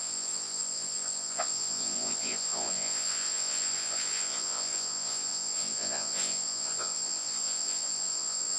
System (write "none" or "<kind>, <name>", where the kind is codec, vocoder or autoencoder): vocoder, Vocos